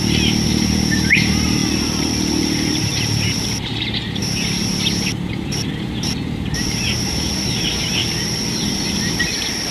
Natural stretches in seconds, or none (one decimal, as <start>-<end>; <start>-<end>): 4.2-5.3